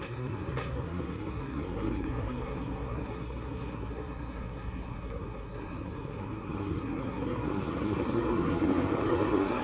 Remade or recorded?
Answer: remade